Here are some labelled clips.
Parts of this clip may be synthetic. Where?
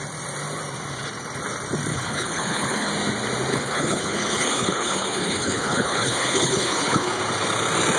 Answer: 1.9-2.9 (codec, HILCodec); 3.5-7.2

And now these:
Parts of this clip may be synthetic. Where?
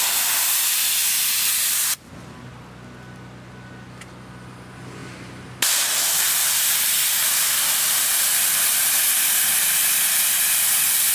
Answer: 7.2-8.1 (vocoder, BigVGAN v2)